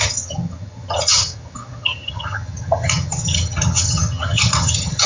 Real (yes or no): no